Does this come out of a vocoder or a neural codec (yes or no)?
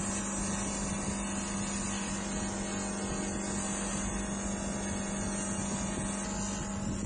no